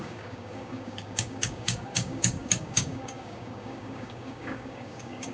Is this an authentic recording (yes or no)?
no